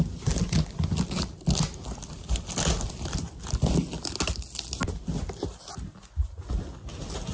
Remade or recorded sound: recorded